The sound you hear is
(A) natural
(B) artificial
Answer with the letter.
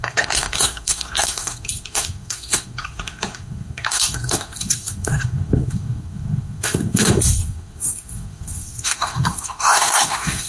B